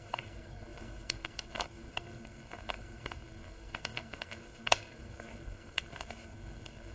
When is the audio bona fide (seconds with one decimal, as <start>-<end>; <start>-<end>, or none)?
none